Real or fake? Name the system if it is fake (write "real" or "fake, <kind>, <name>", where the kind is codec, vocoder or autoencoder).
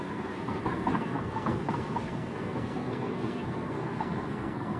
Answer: fake, codec, SNAC